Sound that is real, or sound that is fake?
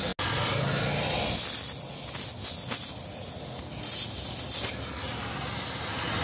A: real